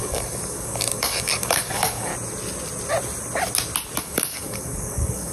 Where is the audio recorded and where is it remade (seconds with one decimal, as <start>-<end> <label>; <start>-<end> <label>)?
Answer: 0.0-2.1 remade; 2.1-4.0 recorded; 4.0-5.3 remade